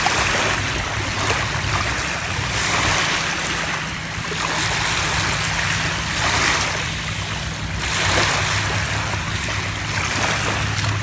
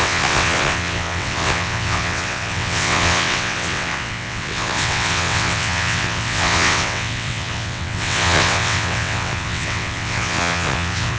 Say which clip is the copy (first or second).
second